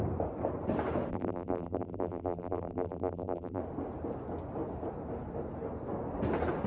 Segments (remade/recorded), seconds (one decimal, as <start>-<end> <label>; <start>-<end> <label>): 0.0-1.1 recorded; 1.1-3.6 remade; 3.6-6.7 recorded